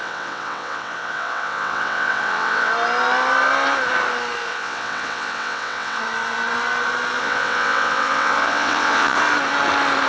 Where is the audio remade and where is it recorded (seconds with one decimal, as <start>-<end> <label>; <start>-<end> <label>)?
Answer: 0.0-2.7 remade; 2.7-4.5 recorded; 4.5-6.0 remade; 6.0-7.2 recorded; 7.2-9.2 remade; 9.2-10.1 recorded